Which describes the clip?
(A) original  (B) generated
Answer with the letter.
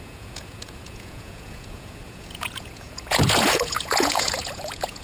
B